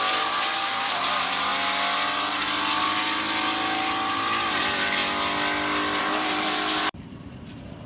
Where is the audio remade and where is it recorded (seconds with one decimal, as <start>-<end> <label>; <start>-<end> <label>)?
0.0-1.5 remade; 1.5-4.6 recorded; 4.6-5.0 remade; 5.0-6.0 recorded; 6.0-7.9 remade